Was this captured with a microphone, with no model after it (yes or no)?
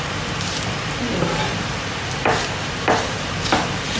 no